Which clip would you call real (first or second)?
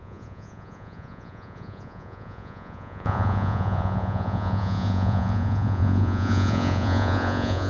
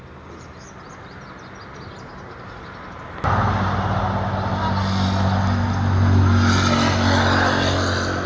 second